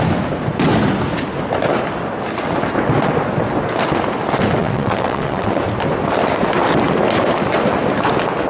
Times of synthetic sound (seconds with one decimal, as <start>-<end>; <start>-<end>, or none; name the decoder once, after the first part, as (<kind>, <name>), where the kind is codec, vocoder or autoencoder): 4.6-5.6 (vocoder, WaveNeXt)

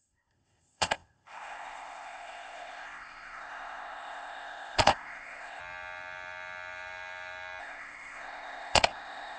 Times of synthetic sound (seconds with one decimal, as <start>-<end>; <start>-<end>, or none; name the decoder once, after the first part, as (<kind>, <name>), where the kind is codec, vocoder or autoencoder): 0.0-5.6 (codec, ZipCodec); 7.6-9.4

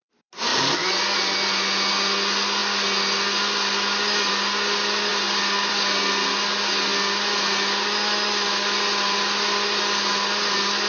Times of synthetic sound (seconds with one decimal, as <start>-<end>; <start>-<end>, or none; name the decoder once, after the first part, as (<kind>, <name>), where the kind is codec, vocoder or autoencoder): none

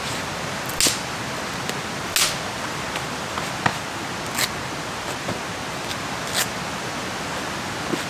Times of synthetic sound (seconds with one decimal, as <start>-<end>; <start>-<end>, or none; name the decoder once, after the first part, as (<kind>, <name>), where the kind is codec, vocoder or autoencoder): none